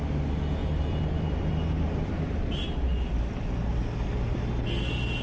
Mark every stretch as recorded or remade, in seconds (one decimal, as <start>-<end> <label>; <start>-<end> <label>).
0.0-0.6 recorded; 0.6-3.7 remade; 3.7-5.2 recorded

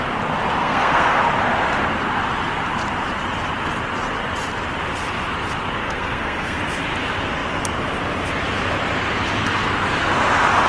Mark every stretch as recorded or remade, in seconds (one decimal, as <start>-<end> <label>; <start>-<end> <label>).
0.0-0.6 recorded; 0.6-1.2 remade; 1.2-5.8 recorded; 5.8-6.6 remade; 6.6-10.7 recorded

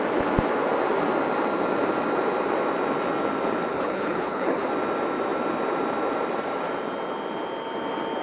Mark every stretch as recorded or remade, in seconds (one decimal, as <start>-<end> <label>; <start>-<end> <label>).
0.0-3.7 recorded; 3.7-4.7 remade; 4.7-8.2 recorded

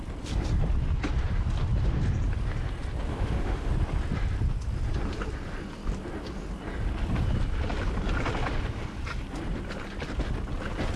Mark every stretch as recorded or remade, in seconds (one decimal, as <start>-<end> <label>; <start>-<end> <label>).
0.0-3.1 recorded; 3.1-3.7 remade; 3.7-11.0 recorded